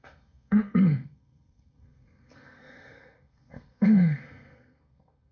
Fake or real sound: fake